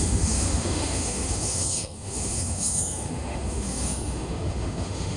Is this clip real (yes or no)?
no